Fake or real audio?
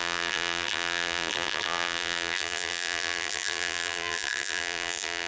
fake